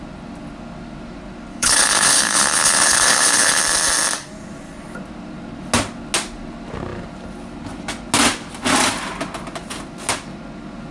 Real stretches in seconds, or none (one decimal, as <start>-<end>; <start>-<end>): 0.0-1.5; 3.6-10.9